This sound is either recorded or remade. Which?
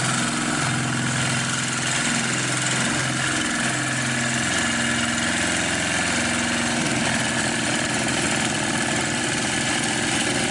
recorded